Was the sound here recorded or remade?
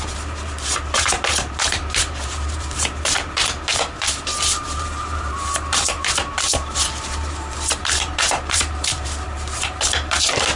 remade